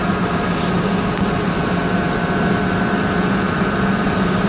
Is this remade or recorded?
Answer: recorded